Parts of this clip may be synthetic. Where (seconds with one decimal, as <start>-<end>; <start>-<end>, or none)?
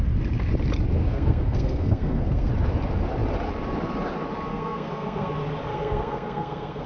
1.0-2.5; 4.5-5.3; 5.7-6.9